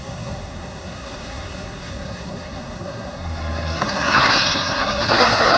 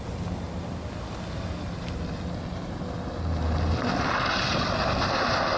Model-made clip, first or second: first